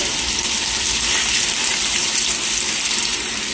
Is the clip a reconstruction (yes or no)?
no